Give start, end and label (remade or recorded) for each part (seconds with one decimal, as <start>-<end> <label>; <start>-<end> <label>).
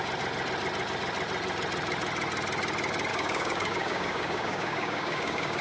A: 0.0-3.1 recorded; 3.1-5.6 remade